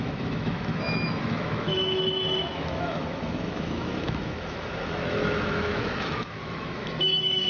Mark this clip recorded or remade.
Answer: remade